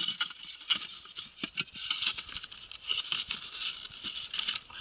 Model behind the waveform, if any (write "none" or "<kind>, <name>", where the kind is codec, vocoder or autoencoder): none